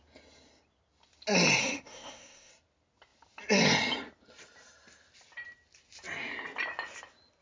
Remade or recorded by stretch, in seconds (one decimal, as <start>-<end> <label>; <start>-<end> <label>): 0.0-1.6 recorded; 1.6-2.5 remade; 2.5-7.4 recorded